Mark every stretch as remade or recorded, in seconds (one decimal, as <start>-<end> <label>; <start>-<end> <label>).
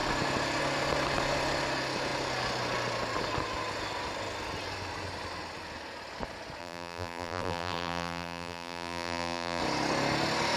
0.0-6.6 recorded; 6.6-9.6 remade; 9.6-10.6 recorded